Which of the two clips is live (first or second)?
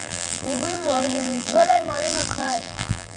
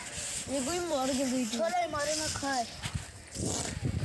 second